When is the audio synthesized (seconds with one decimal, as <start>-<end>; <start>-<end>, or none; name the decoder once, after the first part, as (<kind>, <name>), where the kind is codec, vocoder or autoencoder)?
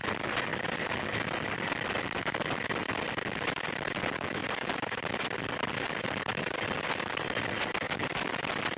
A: none